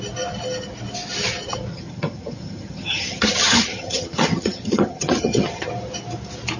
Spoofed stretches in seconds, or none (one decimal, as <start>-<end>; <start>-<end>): 1.7-5.7